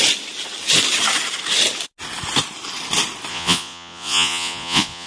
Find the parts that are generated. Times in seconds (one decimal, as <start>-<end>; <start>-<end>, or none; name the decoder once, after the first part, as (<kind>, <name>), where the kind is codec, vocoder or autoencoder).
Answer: 3.3-5.1 (vocoder, Vocos)